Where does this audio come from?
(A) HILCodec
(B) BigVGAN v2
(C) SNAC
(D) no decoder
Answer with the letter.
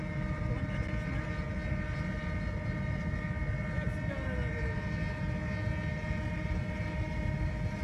D